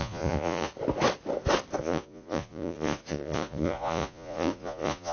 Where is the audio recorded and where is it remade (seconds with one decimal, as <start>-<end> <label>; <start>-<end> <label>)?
0.0-0.7 remade; 0.7-1.8 recorded; 1.8-5.1 remade